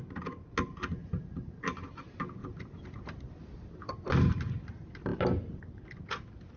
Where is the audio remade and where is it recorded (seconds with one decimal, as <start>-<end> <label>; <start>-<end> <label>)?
0.0-1.0 recorded; 1.0-1.5 remade; 1.5-2.4 recorded; 2.4-3.9 remade; 3.9-6.6 recorded